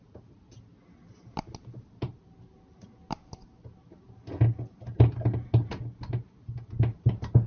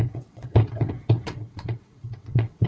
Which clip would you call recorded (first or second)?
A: first